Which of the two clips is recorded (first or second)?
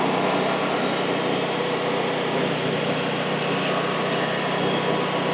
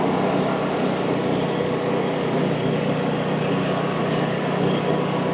first